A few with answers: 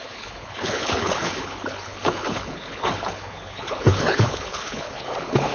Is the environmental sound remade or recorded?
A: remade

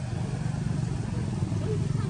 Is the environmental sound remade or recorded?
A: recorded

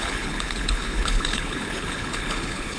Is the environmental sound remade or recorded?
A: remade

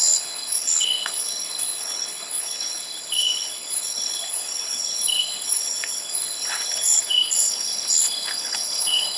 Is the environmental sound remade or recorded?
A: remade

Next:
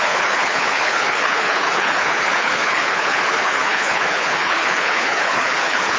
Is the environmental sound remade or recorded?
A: remade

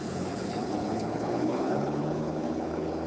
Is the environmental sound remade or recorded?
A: remade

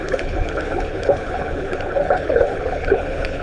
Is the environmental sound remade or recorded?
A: remade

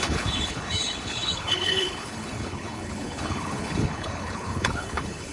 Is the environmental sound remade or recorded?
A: remade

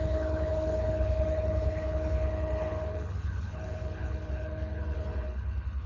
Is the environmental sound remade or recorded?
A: remade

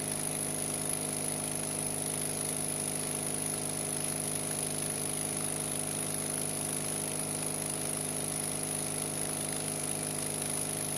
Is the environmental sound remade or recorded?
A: recorded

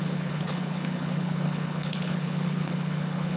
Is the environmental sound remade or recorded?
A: remade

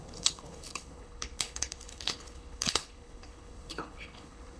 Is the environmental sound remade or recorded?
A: remade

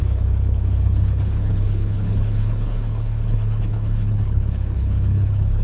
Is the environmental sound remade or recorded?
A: remade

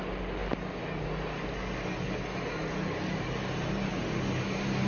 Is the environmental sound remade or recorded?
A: recorded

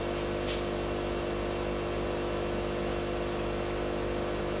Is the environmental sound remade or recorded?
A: recorded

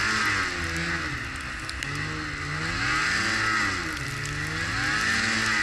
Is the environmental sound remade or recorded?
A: recorded